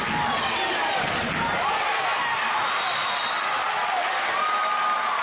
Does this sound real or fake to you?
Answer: real